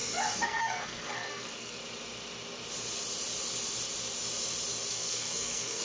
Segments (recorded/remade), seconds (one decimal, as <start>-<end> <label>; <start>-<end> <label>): 0.0-1.8 remade; 1.8-4.9 recorded; 4.9-5.8 remade